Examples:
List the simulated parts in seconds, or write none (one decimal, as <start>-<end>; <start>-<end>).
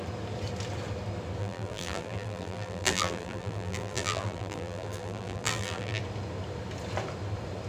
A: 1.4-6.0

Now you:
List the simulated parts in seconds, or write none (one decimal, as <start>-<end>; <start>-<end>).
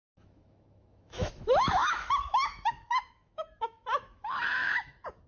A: 0.0-5.3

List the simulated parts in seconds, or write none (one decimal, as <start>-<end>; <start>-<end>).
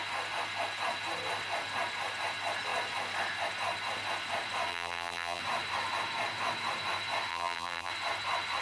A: 4.7-5.4; 7.3-7.9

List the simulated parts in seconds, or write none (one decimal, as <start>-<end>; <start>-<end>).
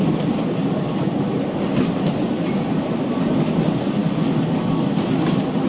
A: none